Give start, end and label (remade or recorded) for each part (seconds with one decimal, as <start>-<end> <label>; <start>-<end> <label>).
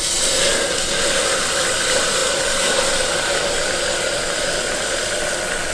0.0-5.7 recorded